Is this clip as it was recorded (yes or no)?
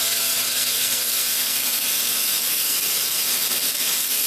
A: no